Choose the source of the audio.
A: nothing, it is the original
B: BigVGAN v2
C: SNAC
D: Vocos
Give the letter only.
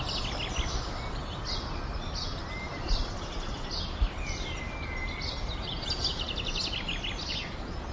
A